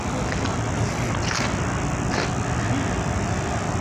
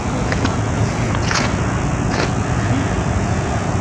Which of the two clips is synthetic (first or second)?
second